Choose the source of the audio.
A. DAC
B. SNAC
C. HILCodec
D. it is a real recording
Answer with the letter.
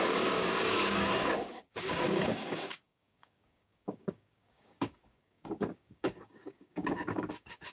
A